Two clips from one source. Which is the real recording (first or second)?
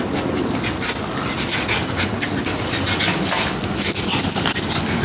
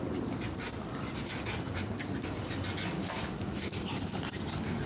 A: first